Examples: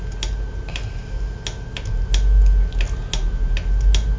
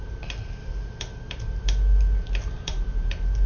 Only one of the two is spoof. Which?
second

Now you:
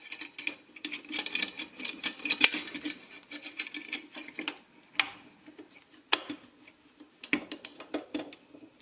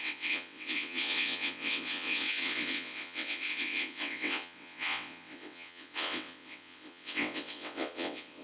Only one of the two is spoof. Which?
second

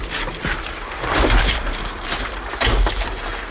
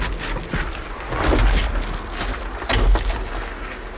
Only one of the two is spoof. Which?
first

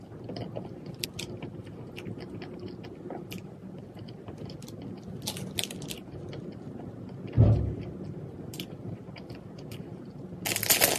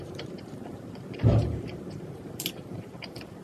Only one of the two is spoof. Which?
second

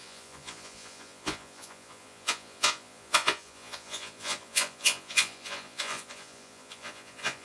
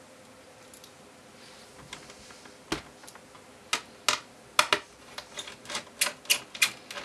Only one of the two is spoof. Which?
first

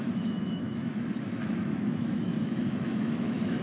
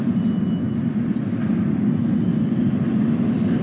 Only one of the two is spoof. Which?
first